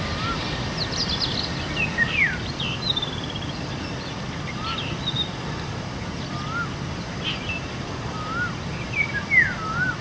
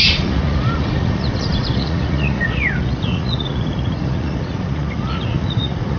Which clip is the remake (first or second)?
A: second